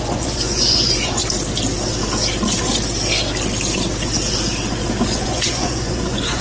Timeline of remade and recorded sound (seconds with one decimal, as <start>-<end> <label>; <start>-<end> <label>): 0.0-1.2 remade; 1.2-5.0 recorded; 5.0-6.4 remade